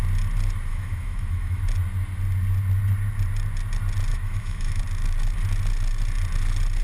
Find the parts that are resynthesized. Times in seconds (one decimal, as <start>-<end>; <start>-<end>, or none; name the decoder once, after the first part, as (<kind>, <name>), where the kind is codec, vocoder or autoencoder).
0.7-1.6 (autoencoder, DAC-VAE); 4.1-4.8